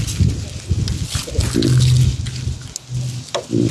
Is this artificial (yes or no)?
no